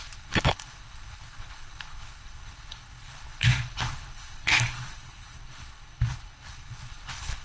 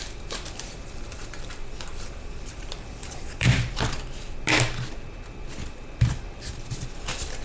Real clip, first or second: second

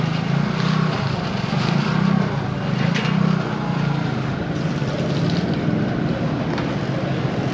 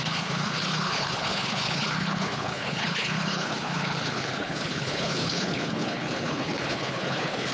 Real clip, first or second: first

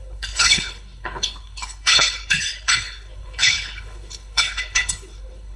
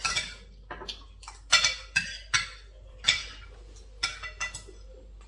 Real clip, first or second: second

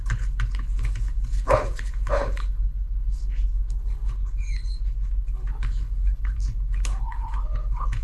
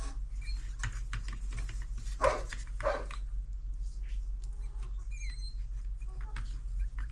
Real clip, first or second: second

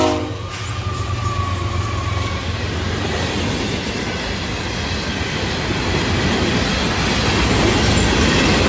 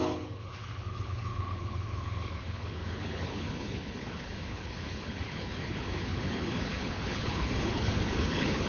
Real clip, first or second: first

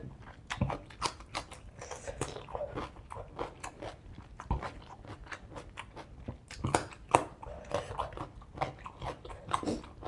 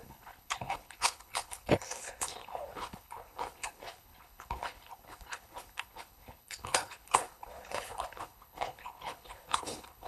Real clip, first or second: first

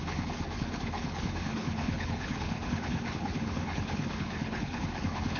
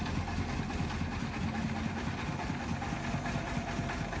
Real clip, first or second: second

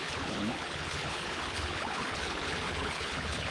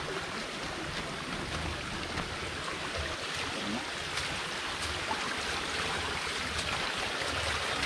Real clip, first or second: second